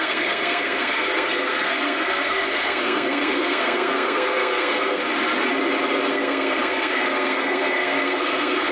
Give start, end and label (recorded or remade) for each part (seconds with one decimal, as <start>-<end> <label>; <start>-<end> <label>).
0.0-5.0 remade; 5.0-6.1 recorded; 6.1-8.7 remade